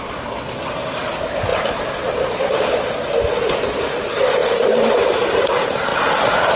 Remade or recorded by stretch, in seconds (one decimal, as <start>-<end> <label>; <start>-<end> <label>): 0.0-6.6 recorded